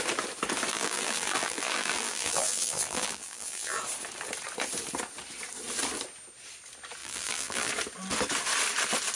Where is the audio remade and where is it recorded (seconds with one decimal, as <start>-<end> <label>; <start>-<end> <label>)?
0.0-0.7 recorded; 0.7-3.8 remade; 3.8-7.0 recorded; 7.0-7.7 remade; 7.7-9.2 recorded